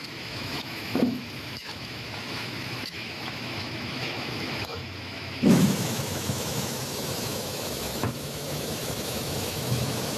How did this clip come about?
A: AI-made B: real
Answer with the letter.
A